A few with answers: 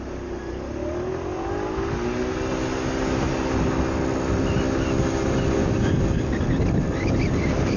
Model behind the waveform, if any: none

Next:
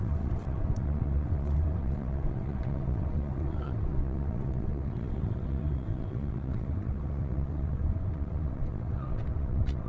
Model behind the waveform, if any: vocoder, WaveNeXt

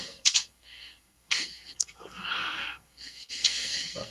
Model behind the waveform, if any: codec, SNAC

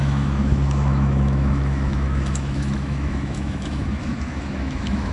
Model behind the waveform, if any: autoencoder, DAC-VAE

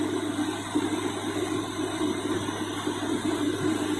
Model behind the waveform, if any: none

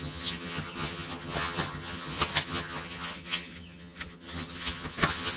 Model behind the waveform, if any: vocoder, HiFi-GAN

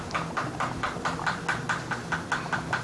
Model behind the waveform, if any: none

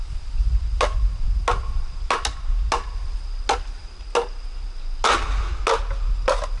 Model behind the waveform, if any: none